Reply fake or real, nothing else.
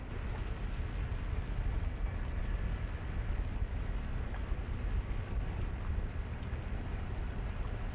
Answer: real